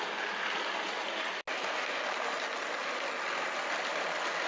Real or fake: real